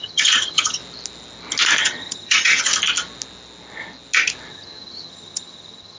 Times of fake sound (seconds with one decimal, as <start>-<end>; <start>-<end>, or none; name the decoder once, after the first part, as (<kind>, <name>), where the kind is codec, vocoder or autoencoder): 0.0-0.8 (vocoder, HiFi-GAN); 1.8-2.7; 4.5-6.0